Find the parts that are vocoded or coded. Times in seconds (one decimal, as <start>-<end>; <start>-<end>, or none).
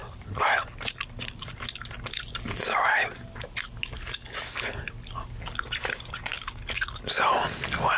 none